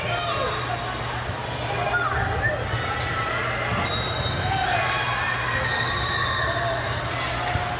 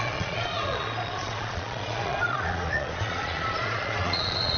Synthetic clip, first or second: second